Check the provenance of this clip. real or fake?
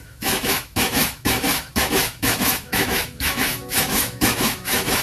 fake